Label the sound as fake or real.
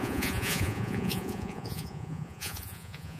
fake